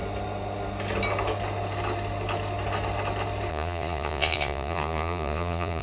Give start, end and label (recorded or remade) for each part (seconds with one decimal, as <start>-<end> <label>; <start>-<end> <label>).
0.0-3.5 recorded; 3.5-5.8 remade